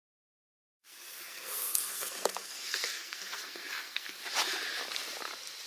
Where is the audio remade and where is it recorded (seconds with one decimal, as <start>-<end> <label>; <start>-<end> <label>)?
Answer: 0.0-0.8 recorded; 0.8-4.2 remade; 4.2-5.7 recorded